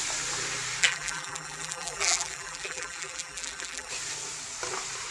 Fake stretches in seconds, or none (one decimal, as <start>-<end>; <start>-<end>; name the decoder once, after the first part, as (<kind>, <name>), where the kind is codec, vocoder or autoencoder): 0.8-3.9 (vocoder, BigVGAN v2)